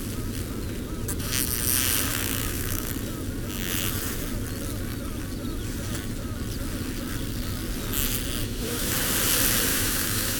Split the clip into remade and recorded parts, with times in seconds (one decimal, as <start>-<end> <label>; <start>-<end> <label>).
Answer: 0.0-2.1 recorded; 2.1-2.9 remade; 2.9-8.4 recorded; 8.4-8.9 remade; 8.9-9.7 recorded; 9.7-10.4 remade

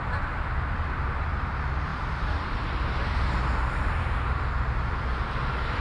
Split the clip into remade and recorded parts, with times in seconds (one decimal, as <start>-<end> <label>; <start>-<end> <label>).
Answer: 0.0-5.8 recorded

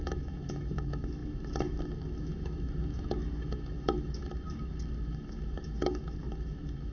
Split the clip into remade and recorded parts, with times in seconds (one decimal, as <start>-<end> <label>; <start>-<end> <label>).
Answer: 0.0-6.9 remade

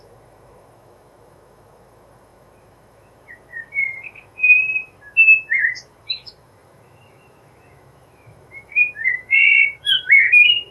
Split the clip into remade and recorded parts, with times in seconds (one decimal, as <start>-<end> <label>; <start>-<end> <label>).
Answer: 0.0-10.7 remade